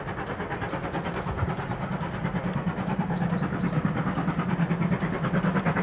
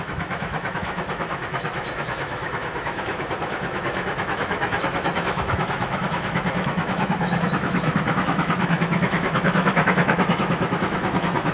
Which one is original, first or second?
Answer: first